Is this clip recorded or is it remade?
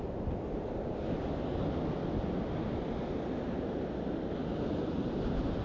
recorded